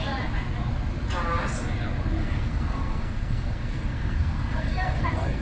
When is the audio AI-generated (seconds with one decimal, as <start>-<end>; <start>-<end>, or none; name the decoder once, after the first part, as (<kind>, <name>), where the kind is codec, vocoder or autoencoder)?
2.2-5.4 (codec, SNAC)